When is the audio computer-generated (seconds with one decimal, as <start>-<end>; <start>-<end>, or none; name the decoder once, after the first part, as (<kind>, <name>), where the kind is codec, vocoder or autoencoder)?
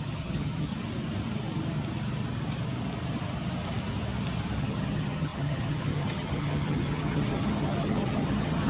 0.0-0.7 (vocoder, HiFi-GAN); 4.6-8.7